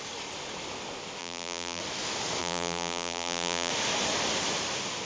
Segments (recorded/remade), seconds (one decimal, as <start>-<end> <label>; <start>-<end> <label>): 0.0-1.2 recorded; 1.2-1.8 remade; 1.8-2.4 recorded; 2.4-3.7 remade; 3.7-5.0 recorded